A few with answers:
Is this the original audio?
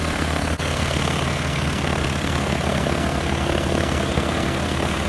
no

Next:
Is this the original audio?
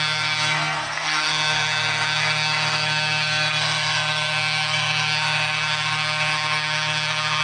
no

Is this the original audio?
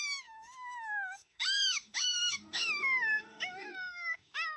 no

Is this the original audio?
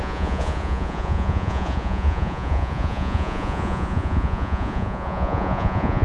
no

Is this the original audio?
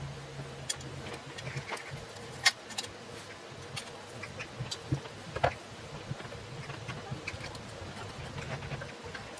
yes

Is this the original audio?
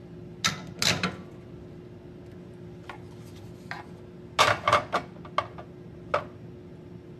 yes